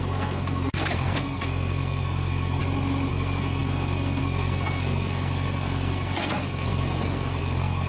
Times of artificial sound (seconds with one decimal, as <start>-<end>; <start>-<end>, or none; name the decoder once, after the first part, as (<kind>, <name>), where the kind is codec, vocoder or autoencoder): 0.0-2.6 (codec, SNAC); 3.1-7.9